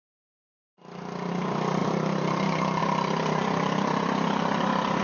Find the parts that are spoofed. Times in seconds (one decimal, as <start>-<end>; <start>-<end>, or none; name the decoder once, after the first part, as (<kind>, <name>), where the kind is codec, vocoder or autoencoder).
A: 0.0-0.7 (vocoder, BigVGAN v2); 1.3-5.0